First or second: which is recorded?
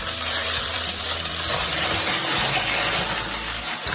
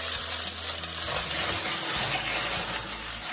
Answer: second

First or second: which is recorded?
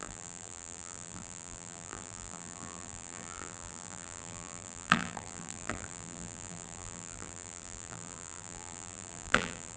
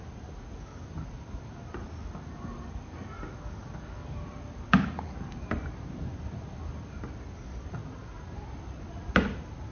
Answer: second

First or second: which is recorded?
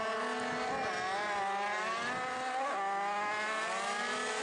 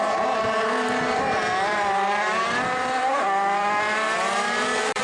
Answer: first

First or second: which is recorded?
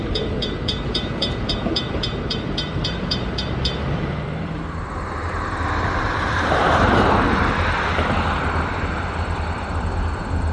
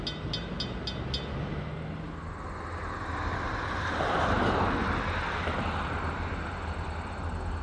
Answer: second